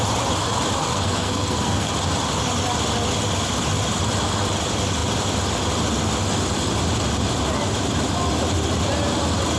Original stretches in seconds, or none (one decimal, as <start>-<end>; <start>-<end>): 0.0-0.8; 1.9-9.6